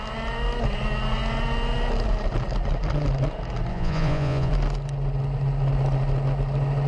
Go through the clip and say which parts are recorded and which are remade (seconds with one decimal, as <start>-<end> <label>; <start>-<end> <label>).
0.0-3.7 recorded; 3.7-4.5 remade; 4.5-6.9 recorded